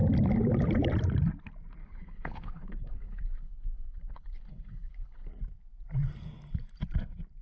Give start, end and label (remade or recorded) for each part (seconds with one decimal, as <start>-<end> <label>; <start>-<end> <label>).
0.0-1.8 recorded; 1.8-5.3 remade; 5.3-7.4 recorded